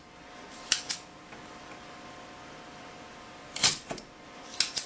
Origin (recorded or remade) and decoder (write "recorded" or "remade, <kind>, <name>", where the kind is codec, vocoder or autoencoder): recorded